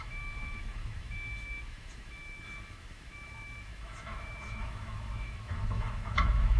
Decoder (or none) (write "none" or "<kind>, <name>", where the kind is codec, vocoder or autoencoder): autoencoder, DAC-VAE